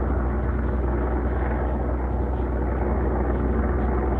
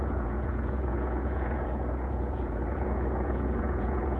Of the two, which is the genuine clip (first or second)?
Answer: first